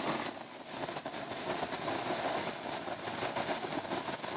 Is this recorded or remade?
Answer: recorded